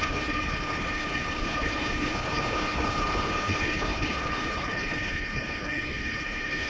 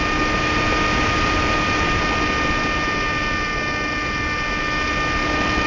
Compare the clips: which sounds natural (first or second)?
second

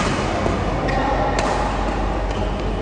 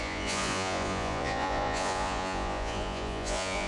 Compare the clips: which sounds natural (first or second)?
first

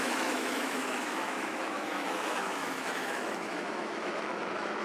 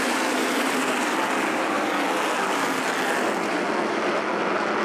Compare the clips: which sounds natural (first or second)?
second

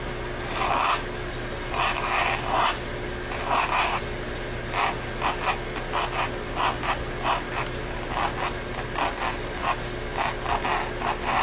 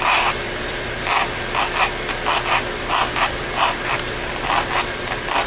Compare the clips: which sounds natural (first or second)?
first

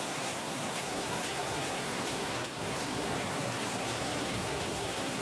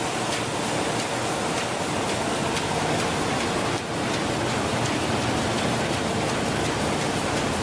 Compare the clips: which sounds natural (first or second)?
second